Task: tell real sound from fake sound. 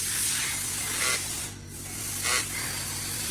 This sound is real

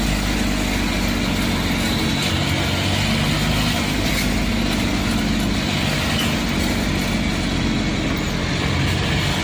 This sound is real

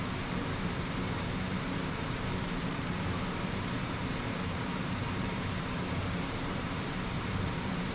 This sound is fake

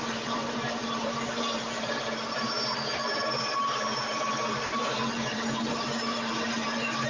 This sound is fake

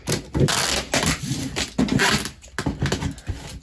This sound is real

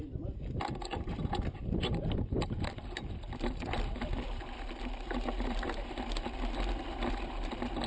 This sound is fake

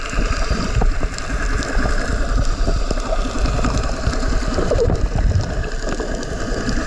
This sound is fake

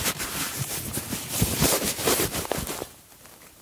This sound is fake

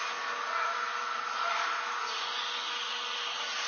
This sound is real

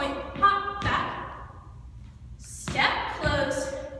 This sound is fake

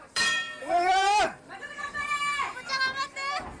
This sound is fake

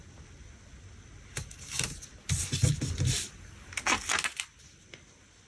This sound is real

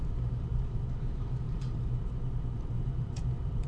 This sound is fake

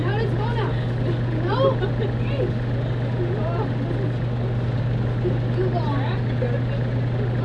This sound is real